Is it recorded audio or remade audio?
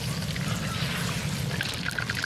recorded